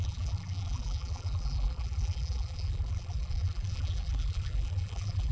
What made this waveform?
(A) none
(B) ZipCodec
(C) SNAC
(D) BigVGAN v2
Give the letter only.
D